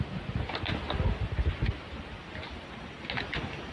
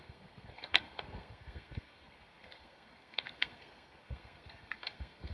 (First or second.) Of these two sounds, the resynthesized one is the second